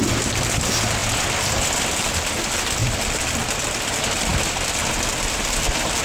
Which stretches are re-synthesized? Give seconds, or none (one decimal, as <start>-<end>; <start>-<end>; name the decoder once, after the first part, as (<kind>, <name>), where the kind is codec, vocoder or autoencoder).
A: none